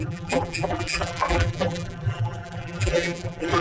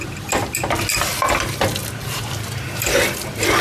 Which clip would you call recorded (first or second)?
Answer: second